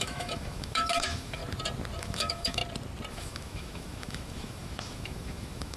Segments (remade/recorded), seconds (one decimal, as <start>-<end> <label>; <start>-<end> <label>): 0.0-1.4 remade; 1.4-2.0 recorded; 2.0-2.6 remade; 2.6-3.1 recorded; 3.1-5.8 remade